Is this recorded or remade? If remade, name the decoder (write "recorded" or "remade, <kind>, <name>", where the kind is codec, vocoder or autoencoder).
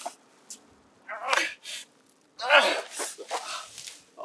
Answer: recorded